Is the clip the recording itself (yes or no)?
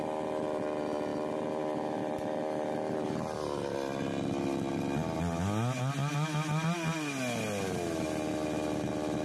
yes